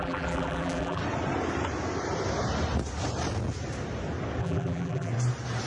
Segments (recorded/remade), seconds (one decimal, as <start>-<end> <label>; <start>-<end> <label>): 0.0-1.0 remade; 1.0-4.4 recorded; 4.4-5.1 remade; 5.1-5.7 recorded